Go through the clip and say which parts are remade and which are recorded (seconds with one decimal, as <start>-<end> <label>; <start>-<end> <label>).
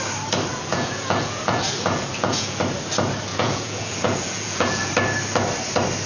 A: 0.0-0.5 recorded; 0.5-2.6 remade; 2.6-3.3 recorded; 3.3-4.9 remade; 4.9-6.1 recorded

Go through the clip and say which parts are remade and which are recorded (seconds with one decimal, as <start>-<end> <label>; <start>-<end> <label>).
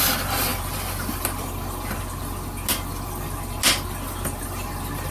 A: 0.0-5.1 recorded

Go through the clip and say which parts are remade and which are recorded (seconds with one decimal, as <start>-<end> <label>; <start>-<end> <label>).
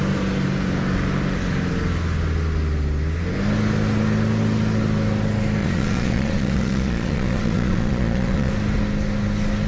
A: 0.0-5.6 recorded; 5.6-8.5 remade; 8.5-9.7 recorded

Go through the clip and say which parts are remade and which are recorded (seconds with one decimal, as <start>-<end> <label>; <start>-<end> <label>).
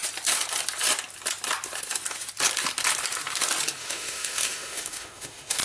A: 0.0-3.8 recorded; 3.8-5.6 remade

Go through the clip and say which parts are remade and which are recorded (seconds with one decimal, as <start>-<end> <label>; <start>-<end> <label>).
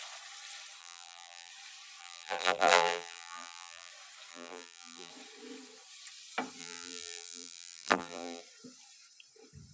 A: 0.0-0.8 recorded; 0.8-1.5 remade; 1.5-2.0 recorded; 2.0-3.9 remade; 3.9-4.3 recorded; 4.3-5.1 remade; 5.1-6.6 recorded; 6.6-8.4 remade; 8.4-9.7 recorded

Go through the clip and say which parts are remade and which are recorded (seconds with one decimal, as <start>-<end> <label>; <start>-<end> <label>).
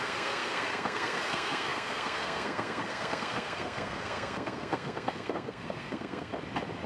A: 0.0-6.3 remade; 6.3-6.9 recorded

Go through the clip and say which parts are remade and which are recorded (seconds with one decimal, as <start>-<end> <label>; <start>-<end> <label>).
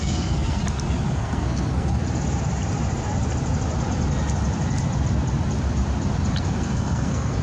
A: 0.0-0.6 remade; 0.6-1.1 recorded; 1.1-2.0 remade; 2.0-6.4 recorded; 6.4-7.4 remade